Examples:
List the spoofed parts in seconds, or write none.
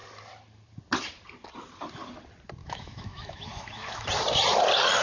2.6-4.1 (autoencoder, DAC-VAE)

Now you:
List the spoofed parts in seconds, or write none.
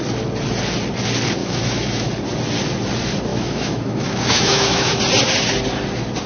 1.4-2.1 (autoencoder, DAC-VAE); 3.3-5.0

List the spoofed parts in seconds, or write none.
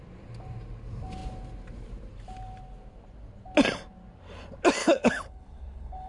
4.8-6.1 (codec, HILCodec)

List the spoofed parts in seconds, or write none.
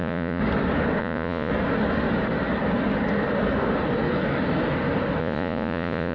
0.0-0.4 (vocoder, Vocos); 1.0-1.5; 5.2-6.1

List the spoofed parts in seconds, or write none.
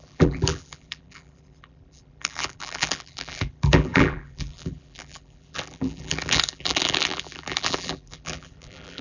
0.0-9.0 (vocoder, BigVGAN v2)